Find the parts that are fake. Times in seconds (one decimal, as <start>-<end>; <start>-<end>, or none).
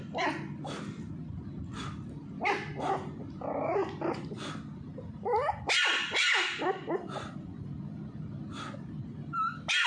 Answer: none